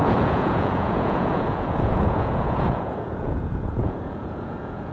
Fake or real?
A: fake